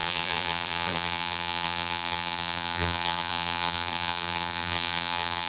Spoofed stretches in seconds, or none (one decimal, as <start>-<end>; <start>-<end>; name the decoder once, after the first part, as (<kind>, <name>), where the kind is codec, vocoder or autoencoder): 0.0-5.5 (vocoder, BigVGAN v2)